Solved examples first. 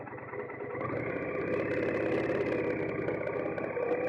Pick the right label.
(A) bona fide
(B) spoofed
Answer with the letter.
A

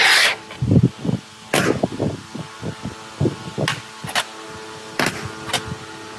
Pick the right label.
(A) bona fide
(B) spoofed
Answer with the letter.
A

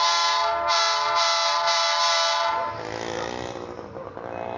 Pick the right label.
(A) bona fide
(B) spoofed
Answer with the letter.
A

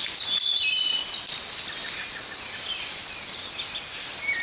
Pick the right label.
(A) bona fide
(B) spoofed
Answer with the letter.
A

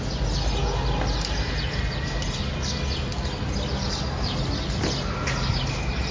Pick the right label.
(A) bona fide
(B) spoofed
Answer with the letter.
A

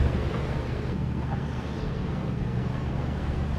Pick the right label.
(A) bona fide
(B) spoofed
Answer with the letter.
B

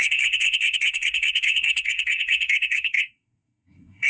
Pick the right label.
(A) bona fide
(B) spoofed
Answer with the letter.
B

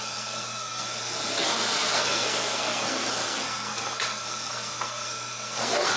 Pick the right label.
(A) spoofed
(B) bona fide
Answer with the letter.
A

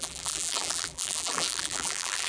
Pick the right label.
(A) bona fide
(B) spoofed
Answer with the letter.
B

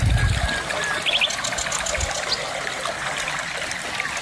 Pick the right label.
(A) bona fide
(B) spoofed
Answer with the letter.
A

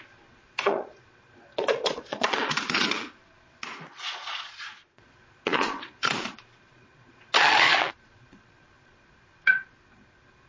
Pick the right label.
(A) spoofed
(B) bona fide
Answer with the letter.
A